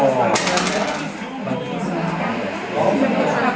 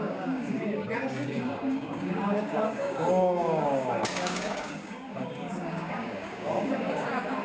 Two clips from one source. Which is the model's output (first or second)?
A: second